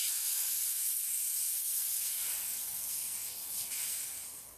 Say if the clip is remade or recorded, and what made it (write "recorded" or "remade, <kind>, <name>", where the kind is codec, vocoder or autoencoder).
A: remade, codec, SNAC